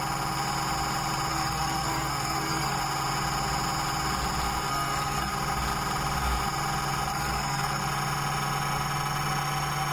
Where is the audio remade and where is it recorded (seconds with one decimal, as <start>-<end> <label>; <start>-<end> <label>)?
0.0-1.3 recorded; 1.3-2.8 remade; 2.8-4.7 recorded; 4.7-5.3 remade; 5.3-7.1 recorded; 7.1-7.8 remade; 7.8-9.9 recorded